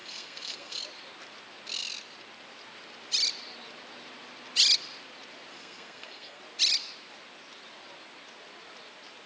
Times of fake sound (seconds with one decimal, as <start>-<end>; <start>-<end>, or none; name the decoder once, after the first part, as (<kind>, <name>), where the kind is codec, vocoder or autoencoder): 0.0-0.8 (codec, SNAC); 5.5-6.4